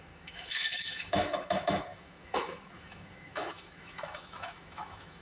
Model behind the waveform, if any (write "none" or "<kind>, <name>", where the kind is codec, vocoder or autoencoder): autoencoder, DAC-VAE